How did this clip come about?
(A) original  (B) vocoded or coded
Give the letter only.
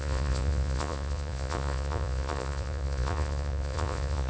B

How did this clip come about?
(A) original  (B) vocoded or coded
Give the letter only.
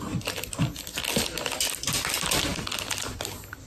A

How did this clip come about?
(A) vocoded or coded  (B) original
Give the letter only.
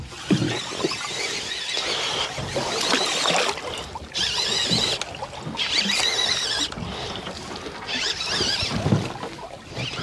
B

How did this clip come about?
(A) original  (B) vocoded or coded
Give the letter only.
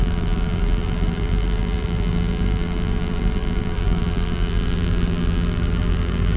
B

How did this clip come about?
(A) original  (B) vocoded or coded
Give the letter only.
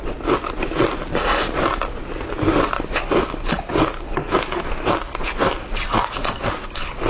A